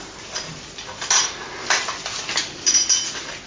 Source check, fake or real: real